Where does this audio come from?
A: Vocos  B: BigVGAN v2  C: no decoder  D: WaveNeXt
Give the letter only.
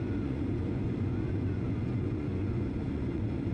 A